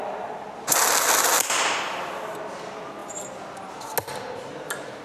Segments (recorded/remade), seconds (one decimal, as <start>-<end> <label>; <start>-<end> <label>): 0.0-5.0 recorded